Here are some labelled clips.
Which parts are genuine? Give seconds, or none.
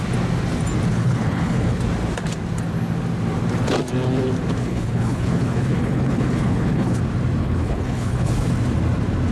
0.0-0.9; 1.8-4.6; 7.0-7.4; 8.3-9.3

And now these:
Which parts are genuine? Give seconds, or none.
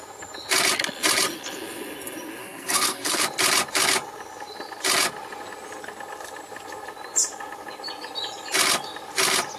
0.0-2.4; 3.2-9.6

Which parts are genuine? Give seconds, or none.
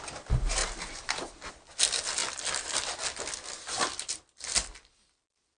0.0-5.6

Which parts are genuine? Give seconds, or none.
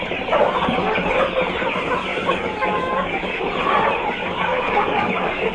0.0-2.1; 3.4-4.2